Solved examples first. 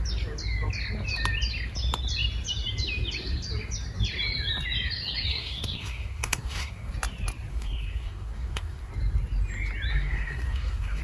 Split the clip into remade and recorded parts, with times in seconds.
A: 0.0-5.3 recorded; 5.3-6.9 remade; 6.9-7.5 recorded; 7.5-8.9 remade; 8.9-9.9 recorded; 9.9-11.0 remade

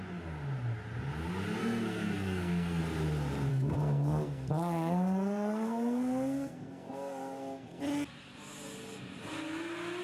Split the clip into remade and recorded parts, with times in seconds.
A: 0.0-1.6 recorded; 1.6-2.8 remade; 2.8-3.5 recorded; 3.5-7.8 remade; 7.8-10.0 recorded

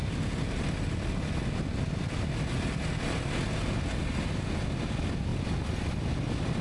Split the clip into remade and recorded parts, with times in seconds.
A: 0.0-6.6 recorded